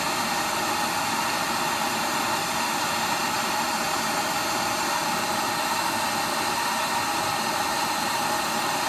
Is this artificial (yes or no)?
no